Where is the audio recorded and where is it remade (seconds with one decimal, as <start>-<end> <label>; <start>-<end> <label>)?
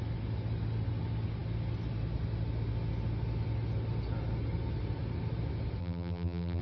0.0-5.8 recorded; 5.8-6.6 remade